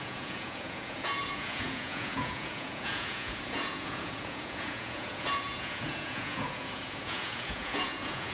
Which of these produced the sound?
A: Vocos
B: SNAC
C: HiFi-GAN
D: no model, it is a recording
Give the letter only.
A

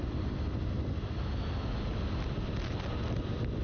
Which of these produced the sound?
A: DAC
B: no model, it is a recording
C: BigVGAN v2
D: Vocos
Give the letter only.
B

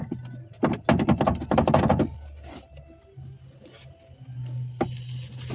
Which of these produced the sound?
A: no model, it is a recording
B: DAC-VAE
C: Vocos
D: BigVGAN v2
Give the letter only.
A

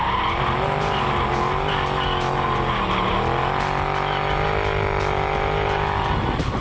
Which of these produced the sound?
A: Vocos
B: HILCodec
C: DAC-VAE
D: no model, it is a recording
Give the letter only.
D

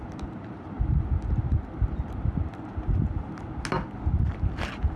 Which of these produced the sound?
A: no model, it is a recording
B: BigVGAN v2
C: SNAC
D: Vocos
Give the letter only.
A